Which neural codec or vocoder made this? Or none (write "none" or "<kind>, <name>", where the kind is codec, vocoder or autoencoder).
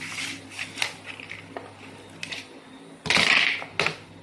none